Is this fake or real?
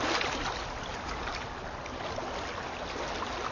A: real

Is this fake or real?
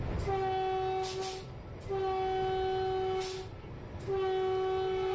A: real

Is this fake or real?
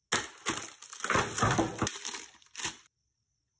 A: real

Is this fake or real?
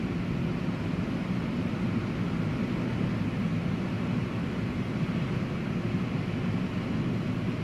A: real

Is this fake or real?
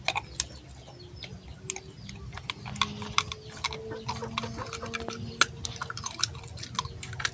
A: real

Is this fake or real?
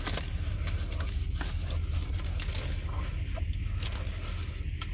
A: real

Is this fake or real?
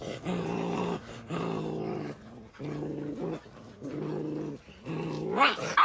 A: real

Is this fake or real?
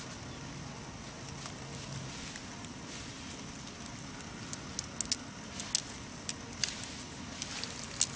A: real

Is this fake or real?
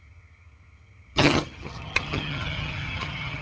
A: fake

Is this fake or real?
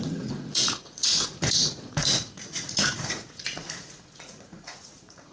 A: fake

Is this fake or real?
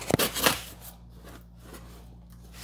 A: real